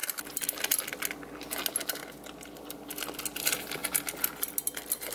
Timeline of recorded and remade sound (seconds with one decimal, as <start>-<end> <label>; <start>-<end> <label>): 0.0-5.1 recorded